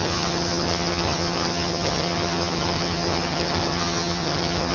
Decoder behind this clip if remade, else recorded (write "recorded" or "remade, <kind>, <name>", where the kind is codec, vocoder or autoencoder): remade, vocoder, HiFi-GAN